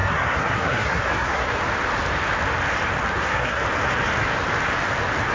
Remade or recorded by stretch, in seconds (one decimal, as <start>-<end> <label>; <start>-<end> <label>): 0.0-1.6 remade; 1.6-3.1 recorded; 3.1-3.6 remade; 3.6-5.3 recorded